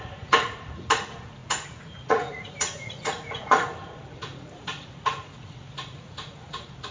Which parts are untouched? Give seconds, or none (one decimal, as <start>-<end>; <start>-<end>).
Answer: none